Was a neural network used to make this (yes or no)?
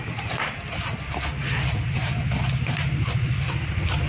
no